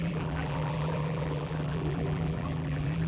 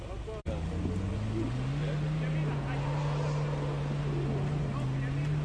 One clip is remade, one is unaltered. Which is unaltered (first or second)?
second